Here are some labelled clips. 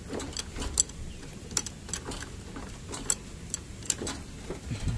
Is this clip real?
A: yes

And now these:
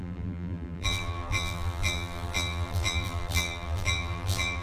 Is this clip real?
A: no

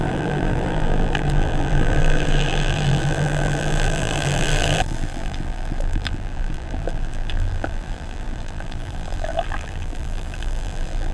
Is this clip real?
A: no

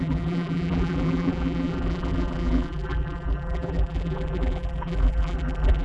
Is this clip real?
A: no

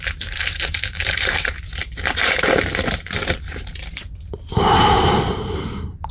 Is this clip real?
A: no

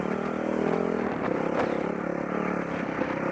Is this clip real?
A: yes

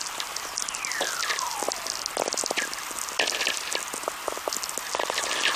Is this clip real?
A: yes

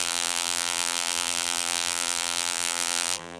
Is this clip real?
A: no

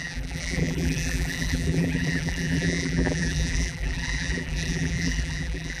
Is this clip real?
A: no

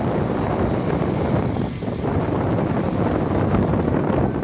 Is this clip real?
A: no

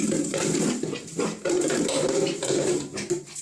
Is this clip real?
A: no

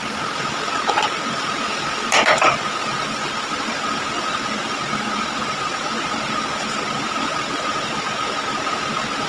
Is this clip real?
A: yes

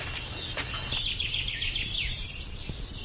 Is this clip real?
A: yes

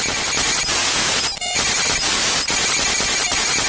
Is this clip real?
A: yes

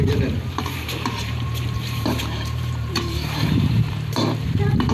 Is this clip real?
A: no